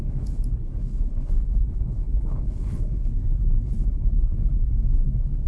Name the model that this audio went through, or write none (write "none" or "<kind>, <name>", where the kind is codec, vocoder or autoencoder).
codec, HILCodec